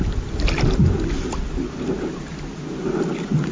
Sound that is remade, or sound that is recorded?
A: recorded